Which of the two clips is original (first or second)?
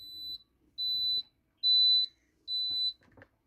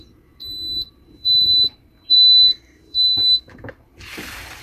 first